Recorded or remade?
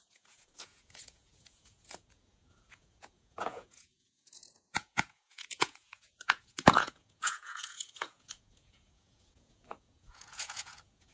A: remade